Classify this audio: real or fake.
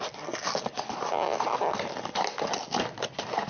real